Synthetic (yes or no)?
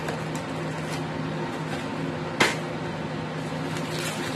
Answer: no